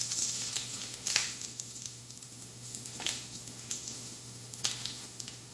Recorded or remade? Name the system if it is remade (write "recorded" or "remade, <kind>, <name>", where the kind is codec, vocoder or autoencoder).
remade, autoencoder, DAC-VAE